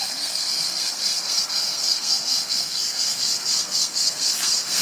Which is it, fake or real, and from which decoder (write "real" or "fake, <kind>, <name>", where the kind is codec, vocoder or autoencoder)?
fake, codec, SNAC